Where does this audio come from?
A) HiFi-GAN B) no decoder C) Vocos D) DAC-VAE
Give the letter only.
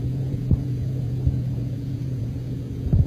C